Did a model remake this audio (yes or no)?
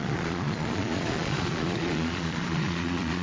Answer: yes